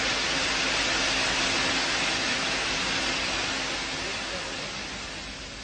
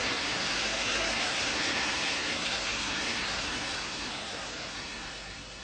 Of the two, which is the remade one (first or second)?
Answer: second